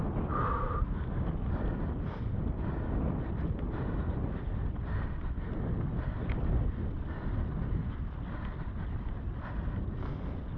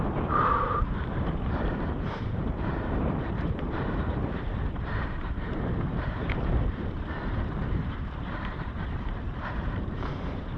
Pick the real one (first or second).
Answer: first